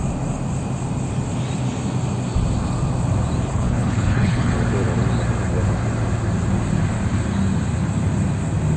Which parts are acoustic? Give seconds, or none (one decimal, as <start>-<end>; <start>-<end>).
0.0-3.5; 4.5-8.8

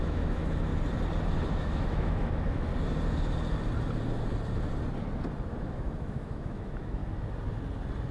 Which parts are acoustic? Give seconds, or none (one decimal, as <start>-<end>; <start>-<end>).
0.7-1.5; 2.7-5.6; 7.0-8.1

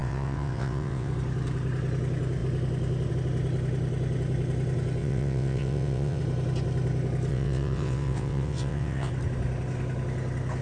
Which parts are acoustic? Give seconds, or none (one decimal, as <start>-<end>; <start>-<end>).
1.1-5.0; 6.2-7.3; 9.1-10.6

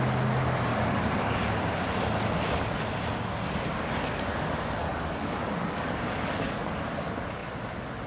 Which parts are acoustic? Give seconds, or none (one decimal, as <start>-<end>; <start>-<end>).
0.0-0.7; 1.6-4.8; 6.7-8.1

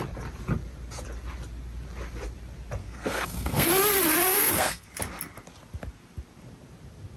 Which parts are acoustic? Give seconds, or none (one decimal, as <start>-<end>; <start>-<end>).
0.0-2.8; 3.7-4.3; 4.9-7.2

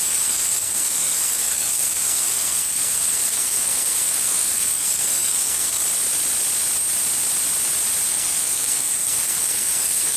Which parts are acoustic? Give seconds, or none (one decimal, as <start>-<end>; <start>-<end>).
5.8-8.1